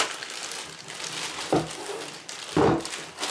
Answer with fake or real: real